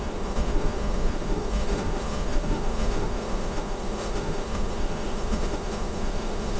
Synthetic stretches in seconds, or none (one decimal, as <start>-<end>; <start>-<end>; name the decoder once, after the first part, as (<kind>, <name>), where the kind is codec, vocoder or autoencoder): 0.0-6.6 (autoencoder, DAC-VAE)